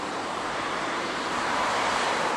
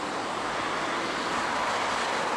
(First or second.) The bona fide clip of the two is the second